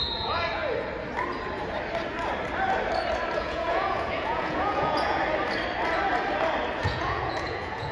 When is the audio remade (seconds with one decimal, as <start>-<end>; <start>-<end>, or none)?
0.0-0.6; 3.4-5.2; 6.8-7.9